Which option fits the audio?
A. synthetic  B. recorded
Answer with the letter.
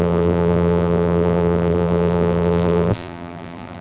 A